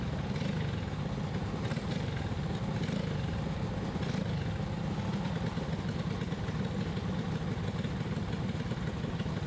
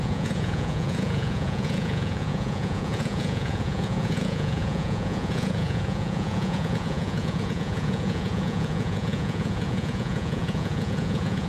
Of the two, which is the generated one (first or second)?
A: second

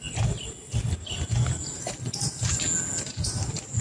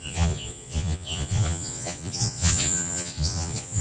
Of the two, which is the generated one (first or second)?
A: second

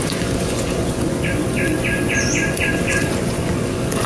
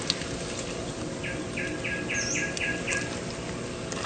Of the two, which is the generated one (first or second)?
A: first